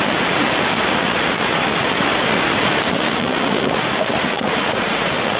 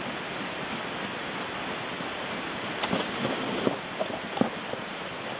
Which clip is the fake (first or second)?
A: first